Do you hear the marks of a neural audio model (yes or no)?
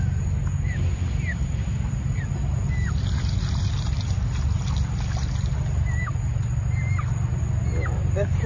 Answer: no